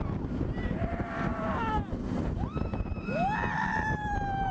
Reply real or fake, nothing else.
fake